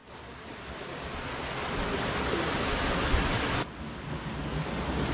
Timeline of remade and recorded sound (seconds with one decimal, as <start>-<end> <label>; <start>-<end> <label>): 0.0-5.1 recorded